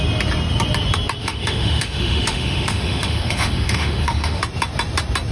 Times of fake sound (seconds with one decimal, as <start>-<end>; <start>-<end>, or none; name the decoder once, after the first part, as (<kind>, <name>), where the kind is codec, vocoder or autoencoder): 1.2-4.4 (autoencoder, DAC-VAE)

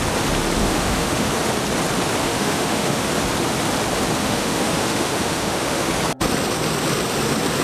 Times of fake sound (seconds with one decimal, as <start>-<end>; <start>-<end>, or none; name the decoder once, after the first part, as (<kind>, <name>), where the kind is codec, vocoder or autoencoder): 0.6-1.3 (autoencoder, DAC-VAE); 2.2-3.1; 4.2-5.9

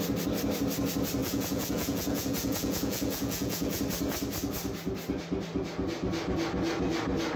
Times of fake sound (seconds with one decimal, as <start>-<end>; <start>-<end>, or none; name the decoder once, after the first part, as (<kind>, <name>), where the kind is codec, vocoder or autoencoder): 1.2-3.8 (vocoder, Vocos)

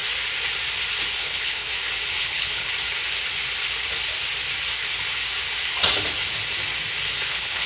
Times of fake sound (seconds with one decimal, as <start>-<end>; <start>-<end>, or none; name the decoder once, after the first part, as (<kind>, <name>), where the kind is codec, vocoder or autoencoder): 1.2-1.7 (codec, HILCodec); 2.2-2.7; 7.3-7.7

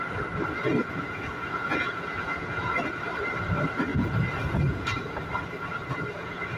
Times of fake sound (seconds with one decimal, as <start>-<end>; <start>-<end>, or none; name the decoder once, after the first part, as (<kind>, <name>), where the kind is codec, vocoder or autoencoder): 0.8-3.0 (vocoder, Vocos); 3.9-5.3; 5.8-6.6

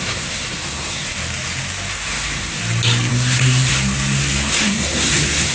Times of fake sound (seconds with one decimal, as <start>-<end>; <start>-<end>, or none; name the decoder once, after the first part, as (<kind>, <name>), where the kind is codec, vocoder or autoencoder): 0.0-1.2 (codec, SNAC); 1.9-2.6; 3.1-3.7; 4.5-5.5

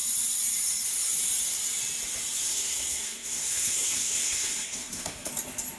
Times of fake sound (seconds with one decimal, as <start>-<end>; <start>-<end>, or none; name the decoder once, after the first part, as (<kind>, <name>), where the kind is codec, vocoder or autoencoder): 2.5-5.3 (codec, SNAC)

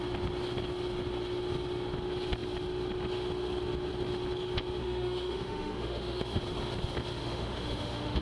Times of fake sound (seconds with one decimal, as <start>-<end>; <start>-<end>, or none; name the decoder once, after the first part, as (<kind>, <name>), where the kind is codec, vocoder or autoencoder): 4.8-6.4 (autoencoder, DAC-VAE); 7.2-8.2